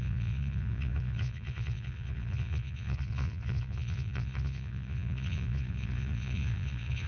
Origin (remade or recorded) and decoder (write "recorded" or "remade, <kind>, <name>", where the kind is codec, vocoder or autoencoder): remade, vocoder, Vocos